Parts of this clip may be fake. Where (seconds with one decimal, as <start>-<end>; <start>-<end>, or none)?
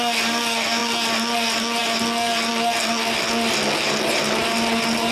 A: none